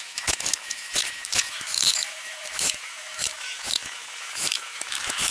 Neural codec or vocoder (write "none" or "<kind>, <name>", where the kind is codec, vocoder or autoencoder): autoencoder, DAC-VAE